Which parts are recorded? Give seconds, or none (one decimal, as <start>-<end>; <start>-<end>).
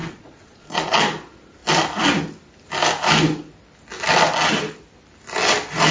1.0-5.9